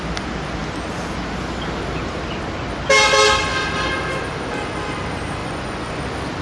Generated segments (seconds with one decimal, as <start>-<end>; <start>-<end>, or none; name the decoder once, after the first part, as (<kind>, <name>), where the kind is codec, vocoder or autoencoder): 5.4-6.0 (vocoder, Vocos)